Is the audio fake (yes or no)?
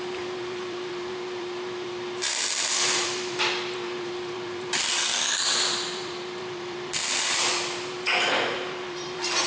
yes